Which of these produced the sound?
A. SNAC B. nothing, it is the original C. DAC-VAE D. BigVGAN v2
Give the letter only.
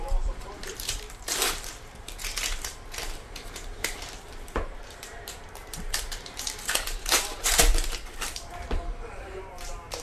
D